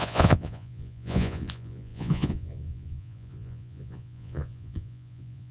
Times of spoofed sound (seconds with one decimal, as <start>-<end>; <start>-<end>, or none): 0.0-5.5